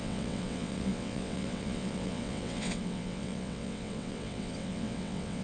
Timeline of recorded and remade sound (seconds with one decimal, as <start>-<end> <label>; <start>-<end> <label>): 0.0-5.4 remade